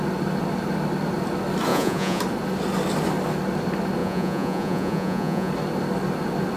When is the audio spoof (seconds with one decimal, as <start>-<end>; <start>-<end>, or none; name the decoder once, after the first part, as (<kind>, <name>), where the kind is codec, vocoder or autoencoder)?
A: 1.7-2.2 (vocoder, Vocos); 4.0-5.5